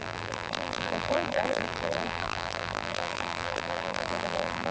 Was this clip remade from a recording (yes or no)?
yes